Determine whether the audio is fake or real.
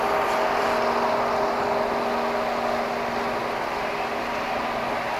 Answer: real